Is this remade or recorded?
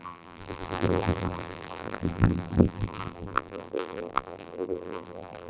remade